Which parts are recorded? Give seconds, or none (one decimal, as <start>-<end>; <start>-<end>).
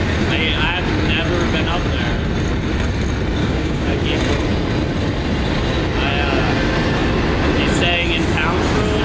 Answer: 0.0-3.4; 4.0-9.0